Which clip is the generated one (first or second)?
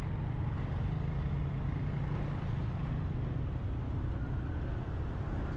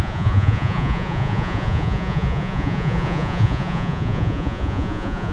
second